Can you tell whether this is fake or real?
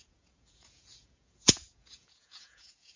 fake